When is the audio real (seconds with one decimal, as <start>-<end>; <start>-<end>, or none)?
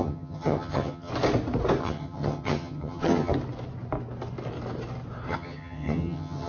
1.1-1.8; 3.3-5.3